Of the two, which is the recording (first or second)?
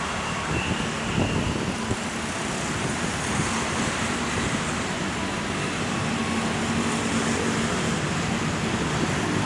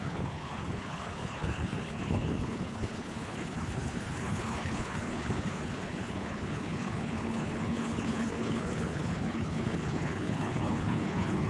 first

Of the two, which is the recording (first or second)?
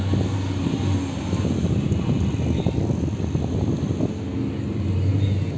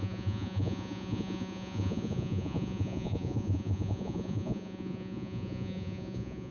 first